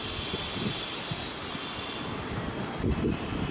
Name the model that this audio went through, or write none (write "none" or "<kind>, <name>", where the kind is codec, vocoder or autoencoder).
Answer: none